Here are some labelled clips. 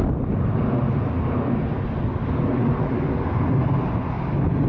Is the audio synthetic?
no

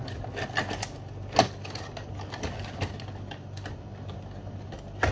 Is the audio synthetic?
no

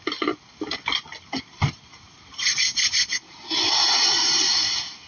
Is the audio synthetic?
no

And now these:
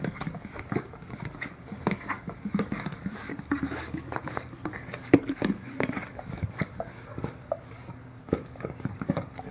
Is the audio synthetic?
yes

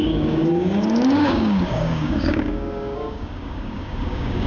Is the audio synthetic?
yes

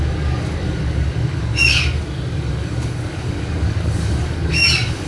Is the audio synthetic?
yes